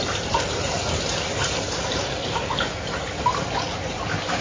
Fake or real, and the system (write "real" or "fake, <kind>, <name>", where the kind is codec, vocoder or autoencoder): real